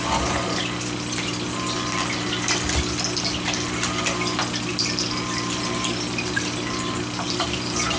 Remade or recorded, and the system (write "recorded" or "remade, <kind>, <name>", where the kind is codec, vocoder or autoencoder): recorded